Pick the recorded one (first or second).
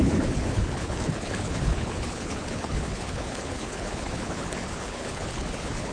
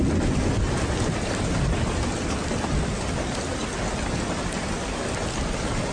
second